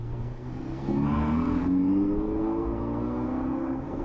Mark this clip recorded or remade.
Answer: remade